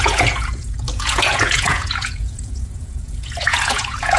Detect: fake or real fake